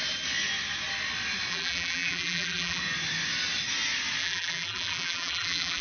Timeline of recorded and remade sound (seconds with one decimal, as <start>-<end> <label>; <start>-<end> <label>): 0.0-1.5 recorded; 1.5-2.8 remade; 2.8-4.2 recorded; 4.2-5.8 remade